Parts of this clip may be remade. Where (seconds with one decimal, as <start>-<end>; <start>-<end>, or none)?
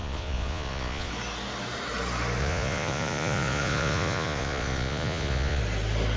0.0-1.1; 2.4-5.6